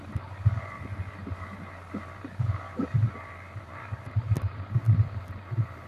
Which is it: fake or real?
fake